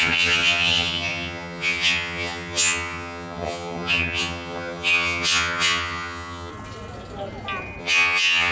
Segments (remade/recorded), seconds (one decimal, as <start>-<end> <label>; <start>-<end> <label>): 0.0-6.5 remade; 6.5-7.8 recorded; 7.8-8.5 remade